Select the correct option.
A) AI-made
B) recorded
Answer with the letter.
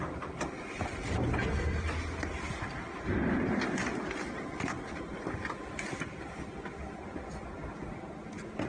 B